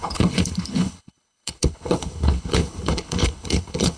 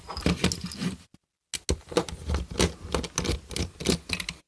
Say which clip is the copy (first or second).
first